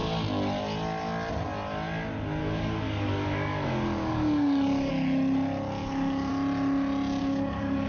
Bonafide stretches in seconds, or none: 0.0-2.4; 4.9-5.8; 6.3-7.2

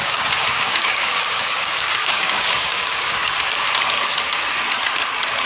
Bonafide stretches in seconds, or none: 3.3-5.5

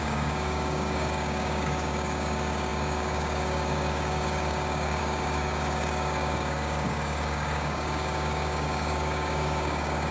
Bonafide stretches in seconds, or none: none